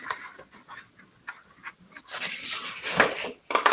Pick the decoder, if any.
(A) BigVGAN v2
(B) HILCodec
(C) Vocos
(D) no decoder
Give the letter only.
A